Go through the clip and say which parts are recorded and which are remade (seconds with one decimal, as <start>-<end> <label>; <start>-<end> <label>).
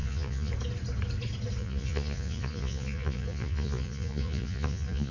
0.0-0.5 remade; 0.5-1.6 recorded; 1.6-5.1 remade